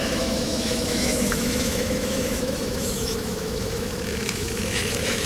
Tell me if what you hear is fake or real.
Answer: fake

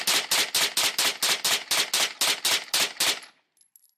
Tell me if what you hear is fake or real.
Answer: real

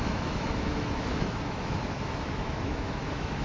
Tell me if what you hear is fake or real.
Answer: fake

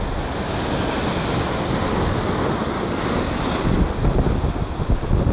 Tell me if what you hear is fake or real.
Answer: real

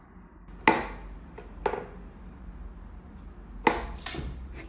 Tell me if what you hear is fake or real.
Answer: real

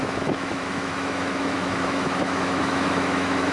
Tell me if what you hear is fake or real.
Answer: fake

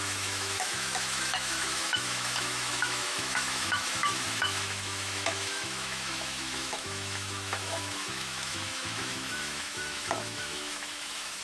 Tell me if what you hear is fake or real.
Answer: fake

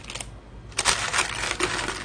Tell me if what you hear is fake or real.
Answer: real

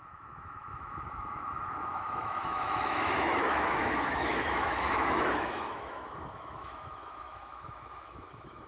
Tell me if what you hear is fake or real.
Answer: fake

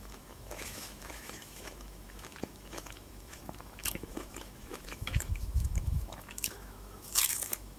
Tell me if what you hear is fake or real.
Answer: fake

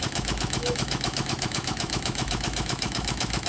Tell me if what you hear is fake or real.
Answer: fake